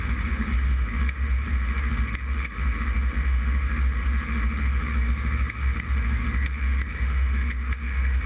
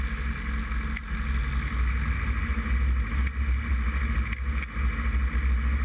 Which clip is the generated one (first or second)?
first